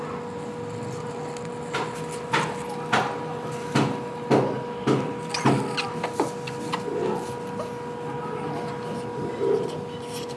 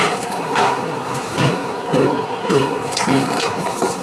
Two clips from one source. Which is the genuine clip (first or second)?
first